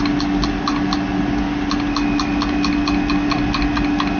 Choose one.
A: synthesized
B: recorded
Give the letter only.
B